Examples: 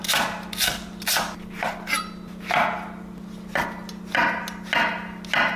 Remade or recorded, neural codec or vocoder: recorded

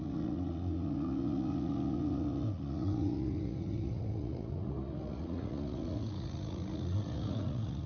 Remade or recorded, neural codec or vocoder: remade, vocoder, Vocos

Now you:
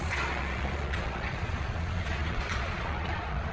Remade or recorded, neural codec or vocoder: remade, vocoder, Vocos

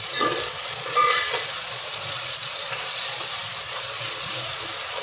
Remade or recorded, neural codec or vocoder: remade, vocoder, Vocos